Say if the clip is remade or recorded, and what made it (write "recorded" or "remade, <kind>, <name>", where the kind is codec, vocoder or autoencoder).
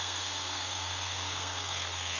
remade, codec, SNAC